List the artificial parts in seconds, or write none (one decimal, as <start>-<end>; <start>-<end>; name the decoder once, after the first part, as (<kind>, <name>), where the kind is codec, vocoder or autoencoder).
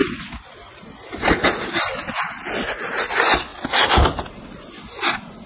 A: none